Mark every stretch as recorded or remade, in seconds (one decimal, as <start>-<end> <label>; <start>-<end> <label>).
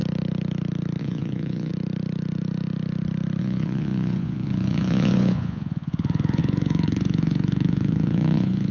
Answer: 0.0-1.0 recorded; 1.0-1.7 remade; 1.7-3.4 recorded; 3.4-8.7 remade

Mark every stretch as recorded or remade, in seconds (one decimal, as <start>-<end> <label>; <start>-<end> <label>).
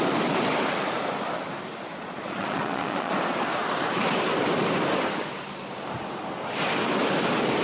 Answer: 0.0-1.9 recorded; 1.9-3.1 remade; 3.1-7.6 recorded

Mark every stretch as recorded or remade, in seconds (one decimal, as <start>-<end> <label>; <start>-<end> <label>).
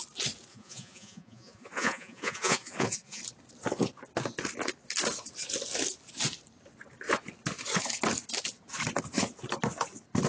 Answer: 0.0-0.5 recorded; 0.5-3.2 remade; 3.2-10.3 recorded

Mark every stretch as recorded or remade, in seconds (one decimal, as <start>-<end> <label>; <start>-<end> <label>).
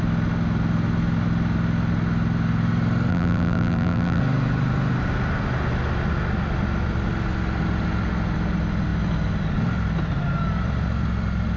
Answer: 0.0-3.1 recorded; 3.1-4.2 remade; 4.2-11.6 recorded